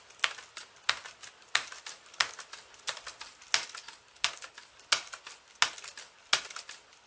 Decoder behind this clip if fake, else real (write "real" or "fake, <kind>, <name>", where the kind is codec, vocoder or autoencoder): real